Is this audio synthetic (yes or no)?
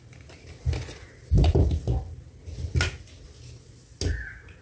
no